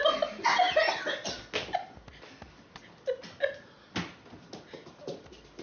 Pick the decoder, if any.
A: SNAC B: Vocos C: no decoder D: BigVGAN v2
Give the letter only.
C